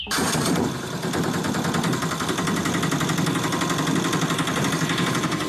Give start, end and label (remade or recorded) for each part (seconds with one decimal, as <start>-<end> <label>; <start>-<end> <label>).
0.0-1.4 remade; 1.4-4.7 recorded; 4.7-5.5 remade